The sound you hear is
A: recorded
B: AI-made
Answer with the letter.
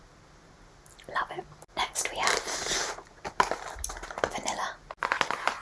A